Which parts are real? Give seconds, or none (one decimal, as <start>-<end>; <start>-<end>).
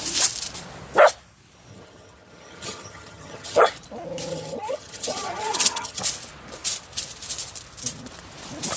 0.0-1.7; 3.7-4.3; 6.0-8.8